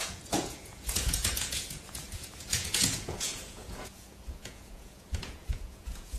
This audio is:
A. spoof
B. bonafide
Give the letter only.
A